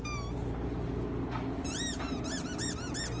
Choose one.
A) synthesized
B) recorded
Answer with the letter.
B